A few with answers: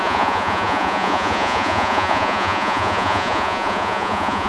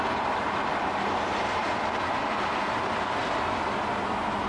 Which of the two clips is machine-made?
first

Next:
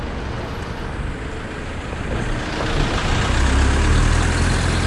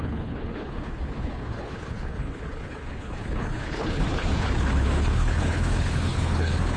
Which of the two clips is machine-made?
second